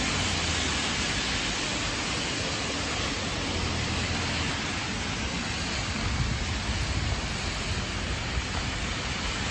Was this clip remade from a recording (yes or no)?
no